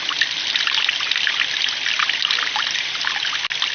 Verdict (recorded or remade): recorded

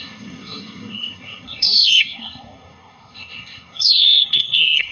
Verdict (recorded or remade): remade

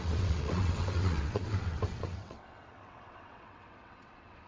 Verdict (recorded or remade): remade